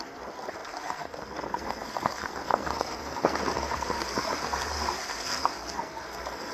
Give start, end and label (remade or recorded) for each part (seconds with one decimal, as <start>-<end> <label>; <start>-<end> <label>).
0.0-6.5 remade